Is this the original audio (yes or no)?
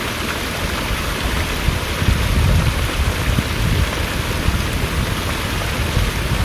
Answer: yes